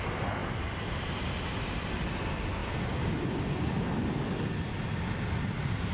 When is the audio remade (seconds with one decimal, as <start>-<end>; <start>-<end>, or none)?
none